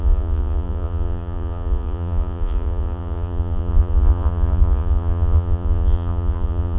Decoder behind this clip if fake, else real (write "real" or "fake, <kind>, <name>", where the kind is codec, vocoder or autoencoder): fake, vocoder, Vocos